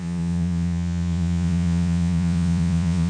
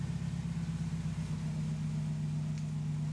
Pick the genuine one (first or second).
second